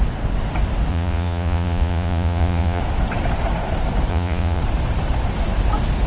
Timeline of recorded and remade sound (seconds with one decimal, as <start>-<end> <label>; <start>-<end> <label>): 0.0-0.9 recorded; 0.9-2.8 remade; 2.8-4.1 recorded; 4.1-4.6 remade; 4.6-6.1 recorded